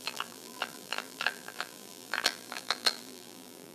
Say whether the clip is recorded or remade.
remade